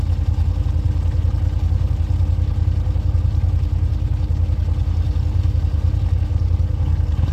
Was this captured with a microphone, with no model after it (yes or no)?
yes